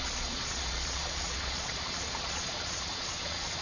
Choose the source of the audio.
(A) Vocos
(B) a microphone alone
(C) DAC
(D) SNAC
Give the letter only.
A